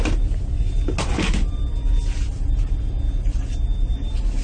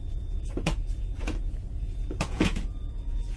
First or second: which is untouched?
first